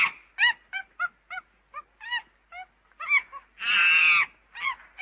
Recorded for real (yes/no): yes